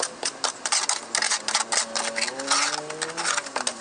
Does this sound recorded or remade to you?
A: recorded